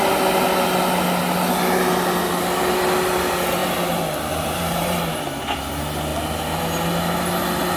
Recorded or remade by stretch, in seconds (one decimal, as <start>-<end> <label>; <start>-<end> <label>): 0.0-3.6 recorded; 3.6-5.0 remade; 5.0-7.8 recorded